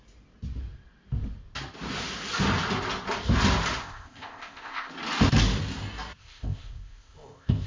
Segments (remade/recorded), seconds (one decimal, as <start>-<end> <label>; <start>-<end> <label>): 0.0-3.8 recorded; 3.8-4.9 remade; 4.9-6.2 recorded; 6.2-7.7 remade